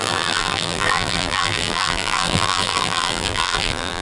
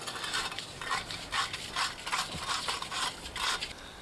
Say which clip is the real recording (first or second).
second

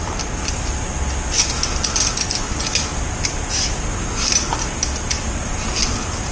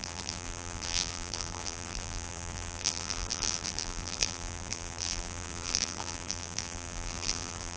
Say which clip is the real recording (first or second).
first